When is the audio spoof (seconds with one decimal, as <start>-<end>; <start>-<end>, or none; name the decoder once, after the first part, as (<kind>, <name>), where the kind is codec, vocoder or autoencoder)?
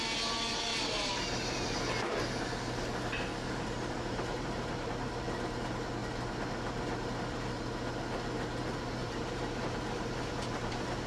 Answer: 0.7-1.9 (vocoder, BigVGAN v2); 3.3-4.9; 9.0-11.1